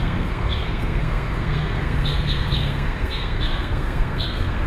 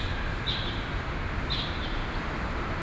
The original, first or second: second